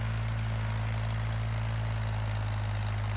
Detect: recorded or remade recorded